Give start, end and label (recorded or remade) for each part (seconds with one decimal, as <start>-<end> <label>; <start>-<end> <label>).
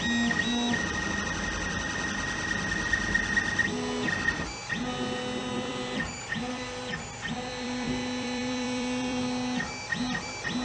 0.0-5.4 recorded; 5.4-9.2 remade; 9.2-10.6 recorded